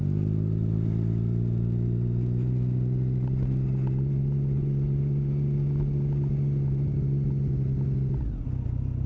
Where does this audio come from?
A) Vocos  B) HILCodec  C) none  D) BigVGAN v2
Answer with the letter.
C